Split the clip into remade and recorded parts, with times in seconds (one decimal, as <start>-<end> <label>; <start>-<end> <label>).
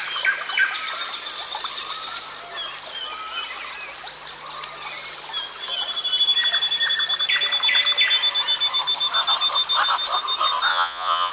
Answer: 0.0-10.7 recorded; 10.7-11.3 remade